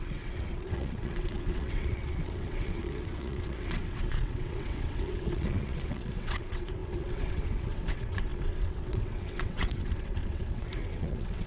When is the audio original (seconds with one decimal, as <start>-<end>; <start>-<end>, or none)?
none